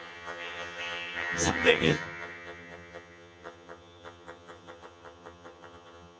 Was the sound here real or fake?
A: fake